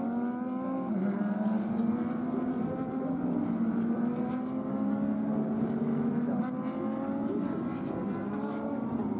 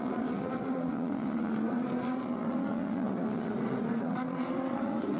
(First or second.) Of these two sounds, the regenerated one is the second